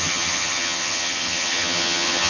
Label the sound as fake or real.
fake